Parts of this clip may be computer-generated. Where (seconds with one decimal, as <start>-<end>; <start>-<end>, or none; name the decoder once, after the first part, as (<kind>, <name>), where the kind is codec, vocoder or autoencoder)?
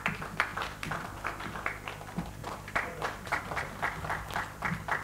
2.4-3.4 (vocoder, BigVGAN v2)